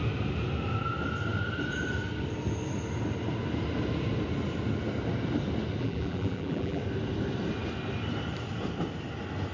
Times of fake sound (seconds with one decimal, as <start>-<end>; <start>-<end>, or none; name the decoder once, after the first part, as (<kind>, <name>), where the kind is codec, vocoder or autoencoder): 5.8-6.8 (vocoder, BigVGAN v2)